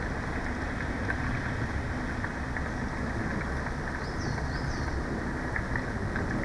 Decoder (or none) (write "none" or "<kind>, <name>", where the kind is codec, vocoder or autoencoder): none